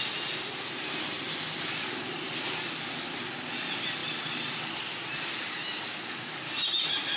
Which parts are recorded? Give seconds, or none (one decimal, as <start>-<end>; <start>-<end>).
0.0-7.2